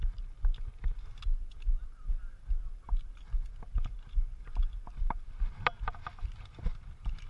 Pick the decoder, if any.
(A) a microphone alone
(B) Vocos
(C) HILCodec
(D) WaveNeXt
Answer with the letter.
A